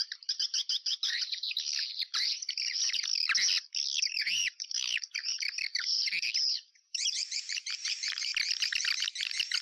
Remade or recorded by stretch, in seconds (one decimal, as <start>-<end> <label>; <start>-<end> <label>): 0.0-3.1 remade; 3.1-4.1 recorded; 4.1-8.3 remade; 8.3-9.6 recorded